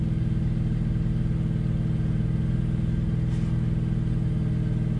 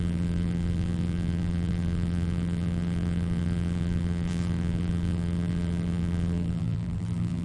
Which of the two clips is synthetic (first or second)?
second